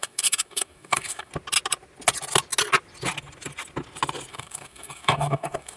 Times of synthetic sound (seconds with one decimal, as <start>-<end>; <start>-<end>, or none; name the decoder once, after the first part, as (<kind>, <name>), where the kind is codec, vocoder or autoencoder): 0.0-1.3 (codec, DAC); 4.3-5.8